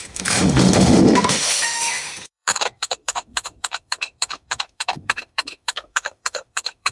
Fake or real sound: fake